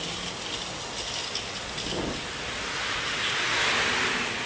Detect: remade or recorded recorded